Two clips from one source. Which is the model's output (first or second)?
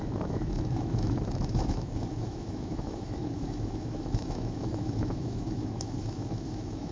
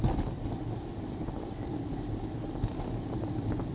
first